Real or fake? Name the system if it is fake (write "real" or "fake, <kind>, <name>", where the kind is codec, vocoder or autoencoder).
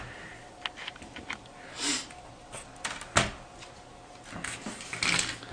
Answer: real